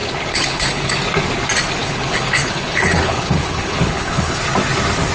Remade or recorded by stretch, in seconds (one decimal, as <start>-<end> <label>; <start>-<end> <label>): 0.0-0.9 remade; 0.9-1.8 recorded; 1.8-4.4 remade; 4.4-5.1 recorded